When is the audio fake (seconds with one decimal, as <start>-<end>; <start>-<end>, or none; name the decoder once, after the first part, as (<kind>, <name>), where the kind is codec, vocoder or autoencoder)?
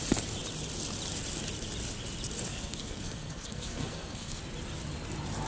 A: 2.5-4.4 (codec, SNAC)